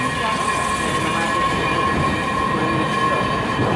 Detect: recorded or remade recorded